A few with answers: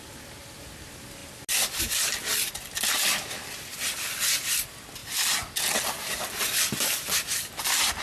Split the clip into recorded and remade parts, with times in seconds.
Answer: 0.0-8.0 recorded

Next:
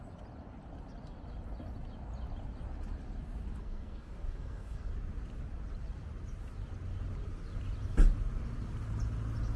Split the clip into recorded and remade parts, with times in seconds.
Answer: 0.0-3.6 recorded; 3.6-4.9 remade; 4.9-9.6 recorded